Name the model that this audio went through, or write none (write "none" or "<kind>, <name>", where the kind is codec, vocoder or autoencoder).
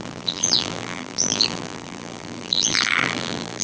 vocoder, BigVGAN v2